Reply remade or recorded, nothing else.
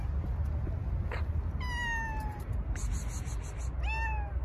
recorded